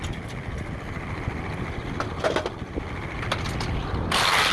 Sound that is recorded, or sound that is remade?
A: recorded